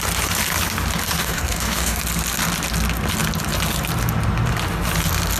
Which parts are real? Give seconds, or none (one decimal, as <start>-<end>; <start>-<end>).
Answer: 0.0-1.2; 2.0-5.4